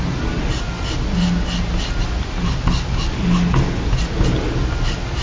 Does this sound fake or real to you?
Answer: real